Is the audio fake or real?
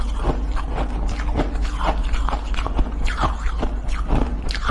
real